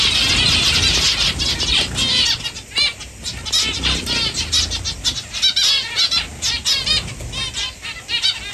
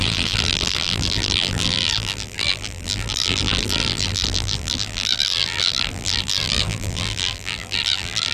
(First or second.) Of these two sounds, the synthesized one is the second